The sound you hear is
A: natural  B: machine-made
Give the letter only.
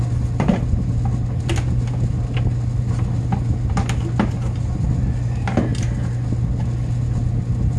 A